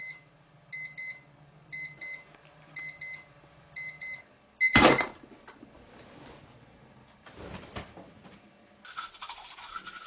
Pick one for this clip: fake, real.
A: real